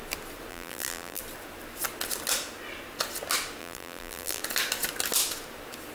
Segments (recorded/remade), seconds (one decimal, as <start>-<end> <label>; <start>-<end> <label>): 0.0-0.5 recorded; 0.5-1.2 remade; 1.2-3.6 recorded; 3.6-4.4 remade; 4.4-5.9 recorded